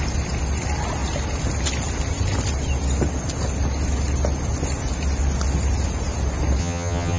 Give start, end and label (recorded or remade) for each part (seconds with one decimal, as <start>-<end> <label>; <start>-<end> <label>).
0.0-6.6 recorded; 6.6-7.2 remade